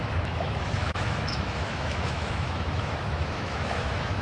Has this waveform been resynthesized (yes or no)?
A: yes